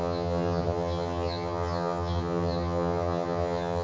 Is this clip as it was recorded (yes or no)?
no